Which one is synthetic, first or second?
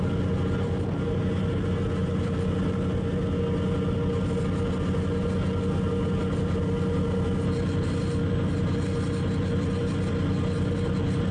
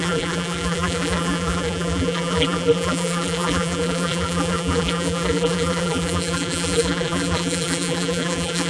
second